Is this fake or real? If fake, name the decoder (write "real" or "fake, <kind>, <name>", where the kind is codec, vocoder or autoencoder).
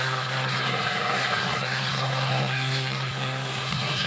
fake, codec, SNAC